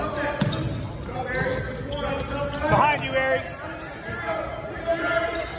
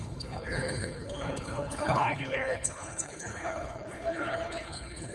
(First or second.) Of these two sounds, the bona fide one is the first